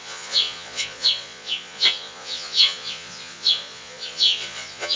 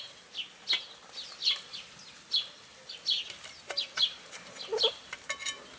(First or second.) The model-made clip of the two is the first